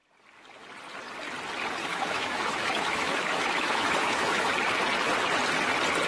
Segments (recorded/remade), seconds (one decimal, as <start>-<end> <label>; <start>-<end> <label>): 0.0-1.8 recorded; 1.8-4.5 remade; 4.5-6.1 recorded